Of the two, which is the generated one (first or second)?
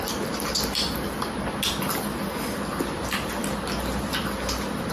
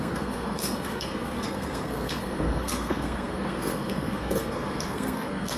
second